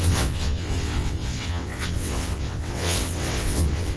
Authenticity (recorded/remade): remade